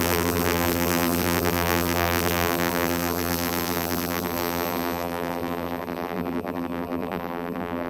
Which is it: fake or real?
fake